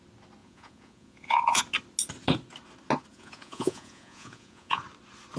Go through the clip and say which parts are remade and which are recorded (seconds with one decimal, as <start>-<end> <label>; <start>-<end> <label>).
0.0-0.4 recorded; 0.4-1.6 remade; 1.6-3.1 recorded; 3.1-4.8 remade; 4.8-5.4 recorded